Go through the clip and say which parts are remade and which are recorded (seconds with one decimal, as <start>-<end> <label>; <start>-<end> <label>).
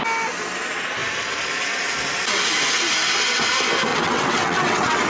0.0-3.9 recorded; 3.9-5.1 remade